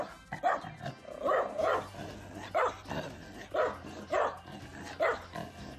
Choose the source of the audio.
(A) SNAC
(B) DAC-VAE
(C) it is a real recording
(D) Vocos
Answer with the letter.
C